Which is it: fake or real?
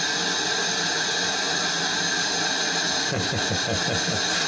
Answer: real